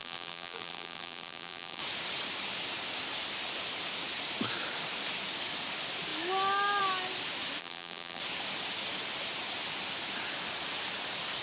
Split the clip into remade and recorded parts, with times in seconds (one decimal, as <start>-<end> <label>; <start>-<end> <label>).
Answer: 0.0-1.8 remade; 1.8-7.6 recorded; 7.6-8.2 remade; 8.2-11.4 recorded